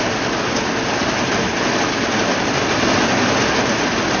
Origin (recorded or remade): recorded